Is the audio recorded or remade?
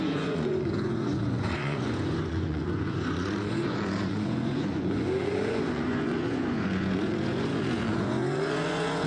remade